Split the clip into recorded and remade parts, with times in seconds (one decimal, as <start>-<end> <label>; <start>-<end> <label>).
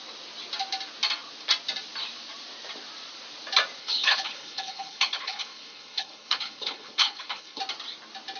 0.0-3.8 recorded; 3.8-7.6 remade; 7.6-8.4 recorded